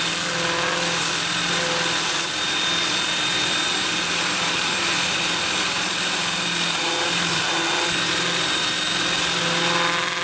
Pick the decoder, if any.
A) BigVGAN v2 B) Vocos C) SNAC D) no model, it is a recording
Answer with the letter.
D